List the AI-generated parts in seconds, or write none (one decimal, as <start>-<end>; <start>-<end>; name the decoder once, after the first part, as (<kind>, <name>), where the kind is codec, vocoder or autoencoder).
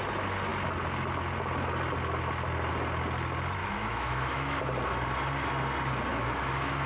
3.6-4.6 (autoencoder, DAC-VAE); 6.1-6.9